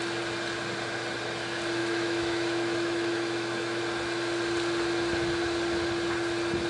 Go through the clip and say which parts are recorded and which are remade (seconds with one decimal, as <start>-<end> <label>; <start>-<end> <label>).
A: 0.0-1.8 recorded; 1.8-3.8 remade; 3.8-6.7 recorded